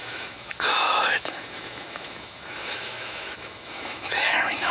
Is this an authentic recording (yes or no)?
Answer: no